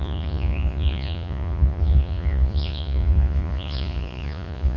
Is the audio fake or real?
fake